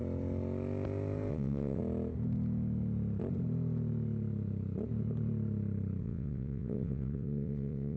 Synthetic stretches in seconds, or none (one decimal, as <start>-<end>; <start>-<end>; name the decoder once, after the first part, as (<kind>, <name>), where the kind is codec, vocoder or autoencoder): 1.3-1.8 (vocoder, WaveNeXt); 6.0-8.0